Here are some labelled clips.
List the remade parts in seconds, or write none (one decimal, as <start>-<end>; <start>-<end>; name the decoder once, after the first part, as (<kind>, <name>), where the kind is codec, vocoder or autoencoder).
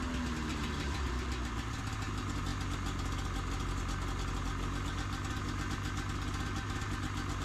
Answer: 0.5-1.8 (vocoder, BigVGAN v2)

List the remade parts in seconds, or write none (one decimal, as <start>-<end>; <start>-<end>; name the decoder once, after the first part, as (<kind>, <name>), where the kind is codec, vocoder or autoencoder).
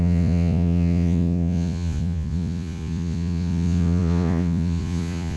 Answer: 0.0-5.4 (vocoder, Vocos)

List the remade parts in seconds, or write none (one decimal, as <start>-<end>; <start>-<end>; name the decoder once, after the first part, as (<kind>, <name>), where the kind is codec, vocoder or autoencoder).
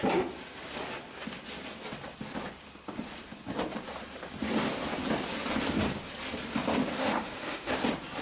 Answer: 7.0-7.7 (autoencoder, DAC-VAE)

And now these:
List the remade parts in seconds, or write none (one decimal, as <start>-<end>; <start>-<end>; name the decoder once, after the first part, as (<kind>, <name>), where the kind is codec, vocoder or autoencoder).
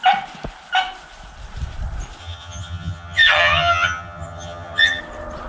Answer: 2.2-5.0 (vocoder, HiFi-GAN)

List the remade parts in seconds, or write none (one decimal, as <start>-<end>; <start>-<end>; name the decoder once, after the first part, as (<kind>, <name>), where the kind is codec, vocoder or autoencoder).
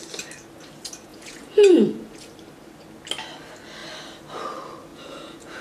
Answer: 1.1-2.3 (vocoder, Vocos); 4.9-5.6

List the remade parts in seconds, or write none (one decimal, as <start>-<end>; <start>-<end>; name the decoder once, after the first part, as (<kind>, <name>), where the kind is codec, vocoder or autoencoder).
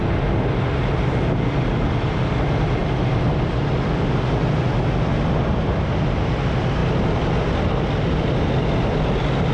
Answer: 2.8-3.5 (vocoder, BigVGAN v2); 5.1-5.9